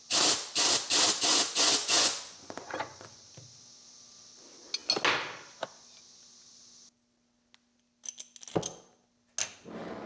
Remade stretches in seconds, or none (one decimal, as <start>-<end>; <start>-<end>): 1.3-3.2